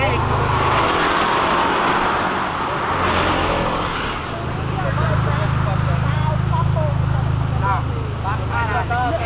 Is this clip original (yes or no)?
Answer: yes